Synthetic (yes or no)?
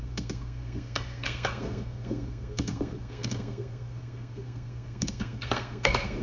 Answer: yes